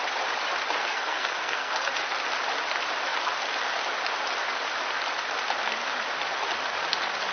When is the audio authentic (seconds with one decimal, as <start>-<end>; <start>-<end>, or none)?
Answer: 0.0-0.8; 1.9-7.3